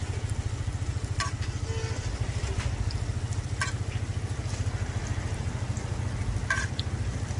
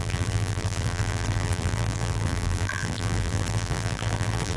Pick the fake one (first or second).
second